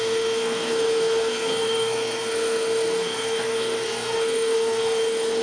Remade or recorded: remade